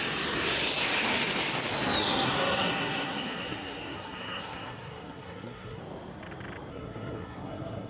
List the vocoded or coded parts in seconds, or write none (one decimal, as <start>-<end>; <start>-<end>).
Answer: 2.0-5.8; 6.7-7.9